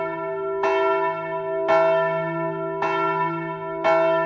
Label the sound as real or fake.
real